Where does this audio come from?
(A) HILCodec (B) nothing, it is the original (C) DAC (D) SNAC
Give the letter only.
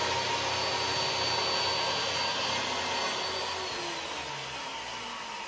B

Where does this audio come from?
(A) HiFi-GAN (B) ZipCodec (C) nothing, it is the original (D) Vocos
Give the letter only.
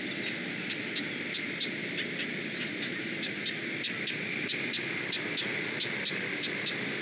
C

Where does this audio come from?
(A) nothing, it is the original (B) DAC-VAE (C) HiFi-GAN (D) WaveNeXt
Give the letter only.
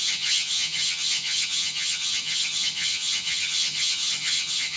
C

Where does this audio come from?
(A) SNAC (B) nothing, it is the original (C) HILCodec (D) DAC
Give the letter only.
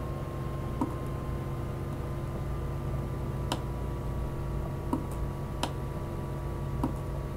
B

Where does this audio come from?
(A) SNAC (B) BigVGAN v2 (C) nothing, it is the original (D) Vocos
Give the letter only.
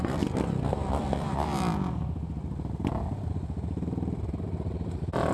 C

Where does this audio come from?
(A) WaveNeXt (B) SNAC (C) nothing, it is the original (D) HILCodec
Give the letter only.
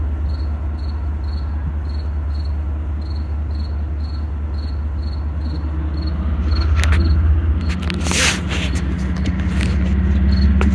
C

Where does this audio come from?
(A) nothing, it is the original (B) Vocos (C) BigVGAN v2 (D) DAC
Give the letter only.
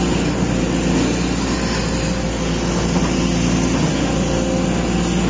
A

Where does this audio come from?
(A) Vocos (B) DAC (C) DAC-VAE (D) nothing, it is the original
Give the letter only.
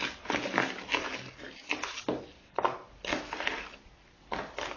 D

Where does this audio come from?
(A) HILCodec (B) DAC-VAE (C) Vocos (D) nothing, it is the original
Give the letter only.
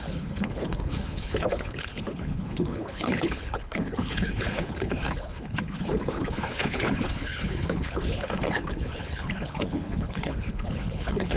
A